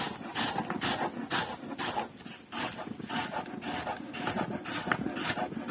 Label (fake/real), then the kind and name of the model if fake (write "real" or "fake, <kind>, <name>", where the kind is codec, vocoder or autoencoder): real